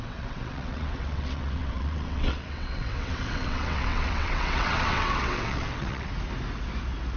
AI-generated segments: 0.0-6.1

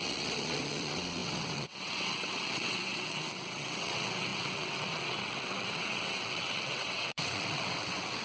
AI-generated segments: 0.0-8.2

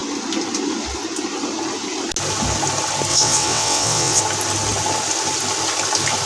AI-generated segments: 3.1-4.2